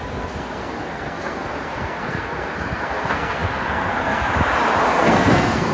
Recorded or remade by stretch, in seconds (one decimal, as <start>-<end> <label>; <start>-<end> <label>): 0.0-4.3 remade; 4.3-5.0 recorded; 5.0-5.7 remade